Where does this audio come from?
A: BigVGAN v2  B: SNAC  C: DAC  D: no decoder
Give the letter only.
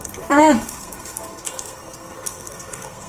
B